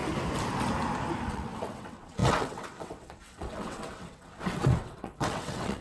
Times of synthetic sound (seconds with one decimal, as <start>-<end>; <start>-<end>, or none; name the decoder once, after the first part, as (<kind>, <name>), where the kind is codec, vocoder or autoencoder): 1.3-5.8 (vocoder, WaveNeXt)